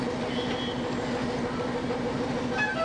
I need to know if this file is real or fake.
real